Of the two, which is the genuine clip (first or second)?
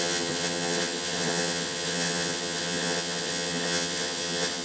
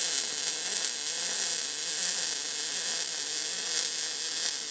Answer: second